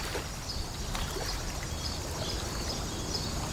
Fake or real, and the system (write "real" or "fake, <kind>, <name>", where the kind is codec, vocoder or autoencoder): real